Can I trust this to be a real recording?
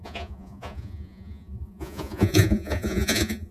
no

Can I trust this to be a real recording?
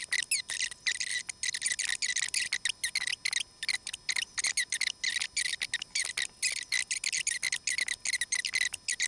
yes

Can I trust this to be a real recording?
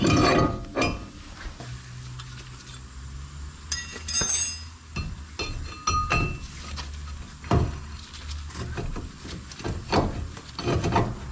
yes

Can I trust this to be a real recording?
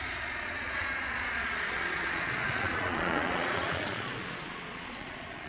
no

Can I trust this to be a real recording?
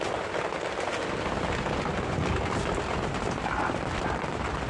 yes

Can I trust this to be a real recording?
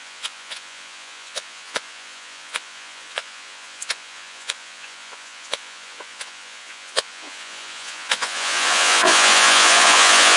no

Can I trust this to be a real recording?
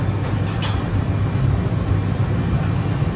yes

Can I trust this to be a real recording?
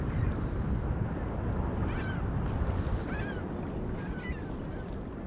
yes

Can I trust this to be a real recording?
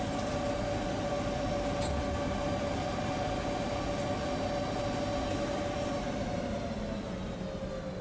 yes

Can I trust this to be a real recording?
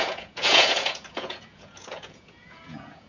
no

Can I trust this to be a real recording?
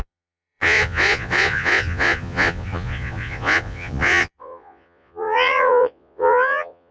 no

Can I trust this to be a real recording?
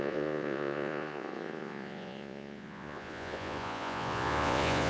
no